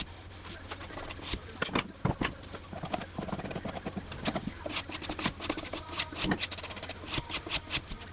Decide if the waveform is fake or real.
real